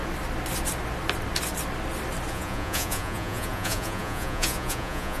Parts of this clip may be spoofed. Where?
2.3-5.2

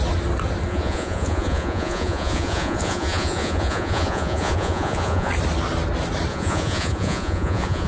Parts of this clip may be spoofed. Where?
0.7-5.3; 6.3-7.9

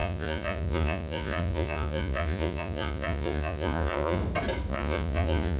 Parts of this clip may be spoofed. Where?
0.0-4.2; 4.7-5.6

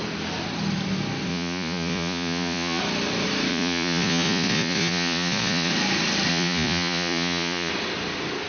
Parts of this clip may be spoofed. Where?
1.3-2.8; 3.5-5.7; 6.3-7.7

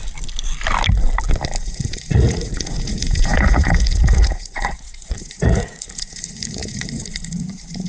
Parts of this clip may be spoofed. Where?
1.6-7.9

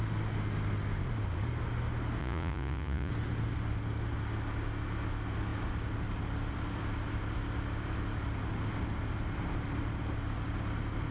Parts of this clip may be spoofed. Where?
2.2-3.1

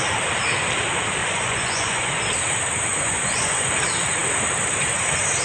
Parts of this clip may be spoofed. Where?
1.2-2.2; 2.9-3.7

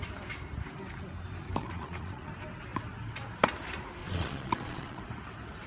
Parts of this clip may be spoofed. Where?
1.6-2.3; 4.0-5.0